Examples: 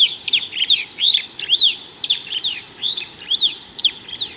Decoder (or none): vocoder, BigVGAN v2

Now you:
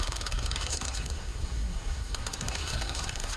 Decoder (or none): codec, SNAC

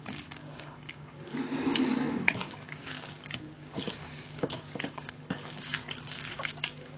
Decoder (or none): codec, DAC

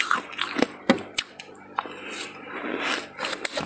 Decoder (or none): none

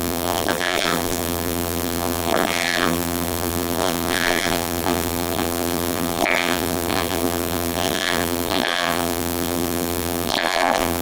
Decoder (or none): vocoder, BigVGAN v2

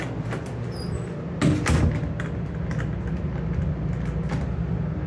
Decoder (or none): none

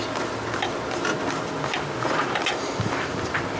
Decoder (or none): none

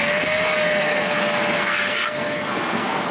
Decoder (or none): codec, SNAC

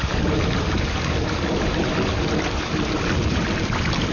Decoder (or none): none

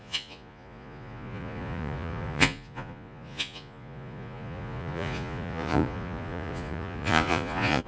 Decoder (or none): vocoder, Vocos